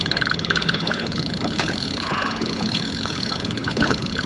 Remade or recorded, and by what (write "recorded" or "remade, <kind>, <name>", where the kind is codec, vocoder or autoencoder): remade, codec, HILCodec